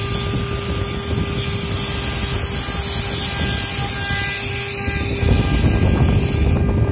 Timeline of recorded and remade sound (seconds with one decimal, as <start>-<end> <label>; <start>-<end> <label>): 0.0-6.9 recorded